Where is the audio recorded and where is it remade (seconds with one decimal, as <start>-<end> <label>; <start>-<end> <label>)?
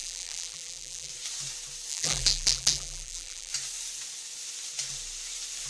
0.0-1.1 remade; 1.1-1.9 recorded; 1.9-3.5 remade; 3.5-5.7 recorded